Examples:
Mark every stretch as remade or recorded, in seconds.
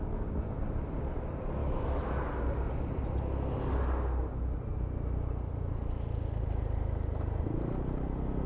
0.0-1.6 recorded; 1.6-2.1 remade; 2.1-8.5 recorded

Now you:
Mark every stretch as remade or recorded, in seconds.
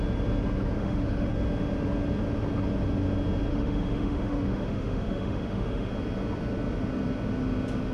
0.0-0.8 recorded; 0.8-1.3 remade; 1.3-3.5 recorded; 3.5-5.9 remade; 5.9-7.9 recorded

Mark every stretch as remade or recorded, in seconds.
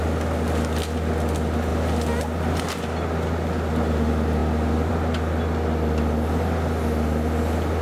0.0-7.8 recorded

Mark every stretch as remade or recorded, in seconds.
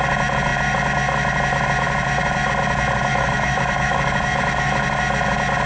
0.0-3.1 recorded; 3.1-4.8 remade; 4.8-5.7 recorded